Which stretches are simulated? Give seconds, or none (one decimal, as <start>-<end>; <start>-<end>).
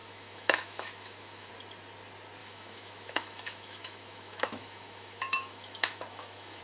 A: 0.0-1.5; 2.4-6.6